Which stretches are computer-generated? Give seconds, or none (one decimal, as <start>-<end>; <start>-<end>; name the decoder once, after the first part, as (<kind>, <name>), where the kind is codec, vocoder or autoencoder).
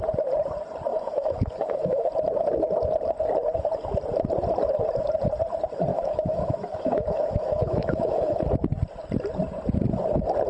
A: 0.9-2.1 (autoencoder, DAC-VAE); 5.9-8.4